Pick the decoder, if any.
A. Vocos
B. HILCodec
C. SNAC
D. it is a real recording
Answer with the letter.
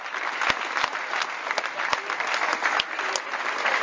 D